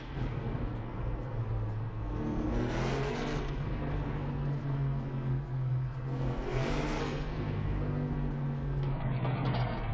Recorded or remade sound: remade